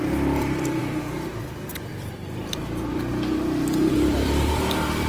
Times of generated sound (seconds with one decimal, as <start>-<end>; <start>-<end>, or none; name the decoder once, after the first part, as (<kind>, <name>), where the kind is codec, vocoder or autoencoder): 0.0-0.8 (vocoder, BigVGAN v2); 1.9-5.1